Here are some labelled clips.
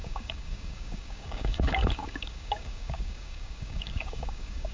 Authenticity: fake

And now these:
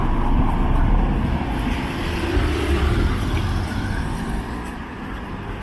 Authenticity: real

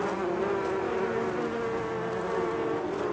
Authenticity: real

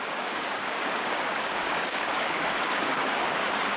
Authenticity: fake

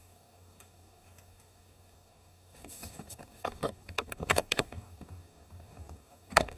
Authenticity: fake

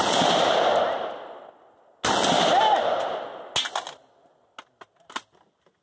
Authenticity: real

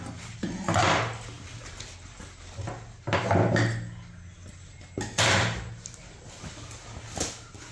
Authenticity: real